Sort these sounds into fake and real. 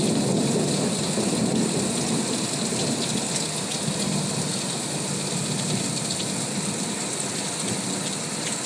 real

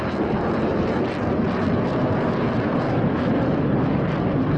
real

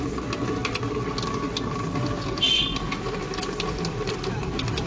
real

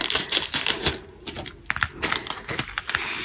real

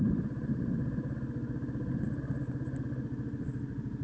real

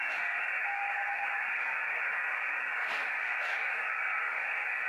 fake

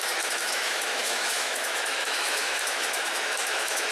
fake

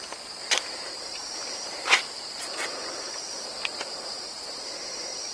fake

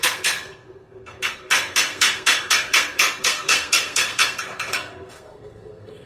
fake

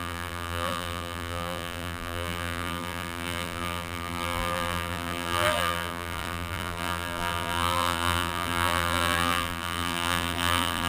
fake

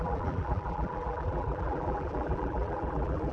fake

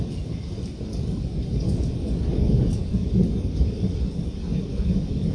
fake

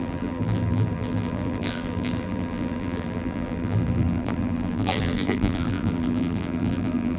fake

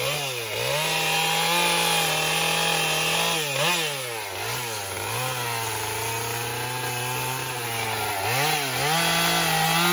real